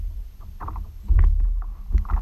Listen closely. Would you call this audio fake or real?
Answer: real